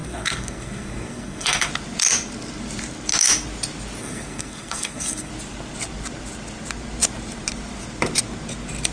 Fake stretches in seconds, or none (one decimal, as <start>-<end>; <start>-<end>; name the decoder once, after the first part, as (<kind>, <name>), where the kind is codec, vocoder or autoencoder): 0.0-1.7 (codec, SNAC); 4.0-5.3